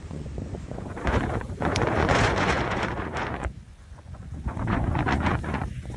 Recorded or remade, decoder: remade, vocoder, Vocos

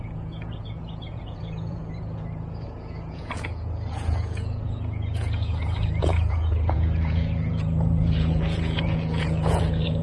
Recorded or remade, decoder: remade, vocoder, Vocos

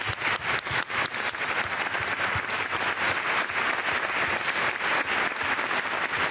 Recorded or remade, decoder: recorded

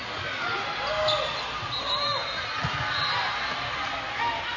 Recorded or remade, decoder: recorded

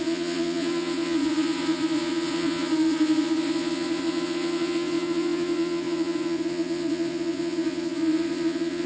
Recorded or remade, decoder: remade, vocoder, Vocos